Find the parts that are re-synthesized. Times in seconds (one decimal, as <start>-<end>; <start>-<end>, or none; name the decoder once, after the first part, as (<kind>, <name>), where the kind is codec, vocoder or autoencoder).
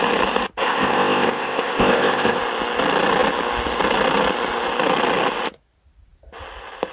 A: 0.6-2.4 (codec, ZipCodec)